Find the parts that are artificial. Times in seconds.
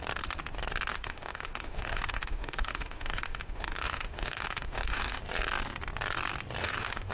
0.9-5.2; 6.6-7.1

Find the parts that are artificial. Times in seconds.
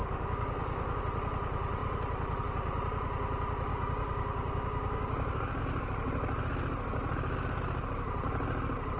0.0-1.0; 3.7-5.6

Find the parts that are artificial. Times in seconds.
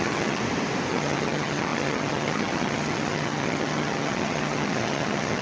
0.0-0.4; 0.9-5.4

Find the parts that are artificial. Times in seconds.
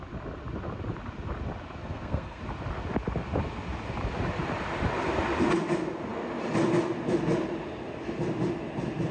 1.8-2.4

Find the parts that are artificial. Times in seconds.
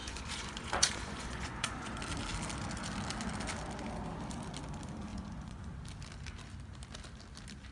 0.0-2.0; 5.1-5.7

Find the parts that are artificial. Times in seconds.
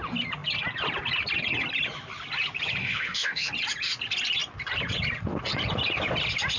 2.8-3.5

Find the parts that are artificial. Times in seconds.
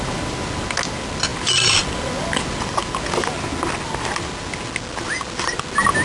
none